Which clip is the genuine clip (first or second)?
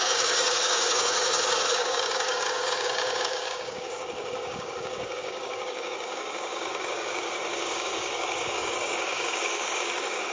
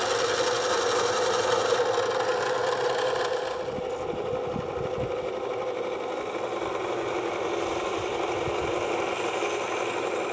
second